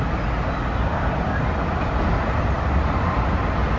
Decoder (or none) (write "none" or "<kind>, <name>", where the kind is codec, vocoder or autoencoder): none